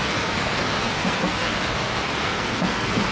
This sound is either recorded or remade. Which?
remade